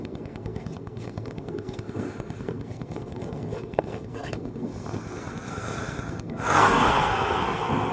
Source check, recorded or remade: remade